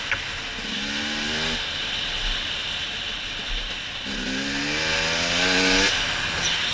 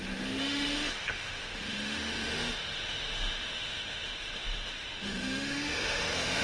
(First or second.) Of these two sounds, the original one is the first